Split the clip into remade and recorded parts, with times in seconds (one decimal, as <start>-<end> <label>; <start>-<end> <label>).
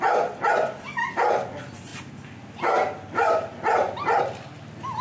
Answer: 0.0-5.0 recorded